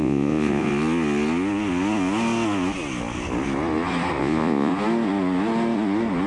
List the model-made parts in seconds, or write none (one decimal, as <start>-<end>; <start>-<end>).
0.0-0.7; 4.2-4.7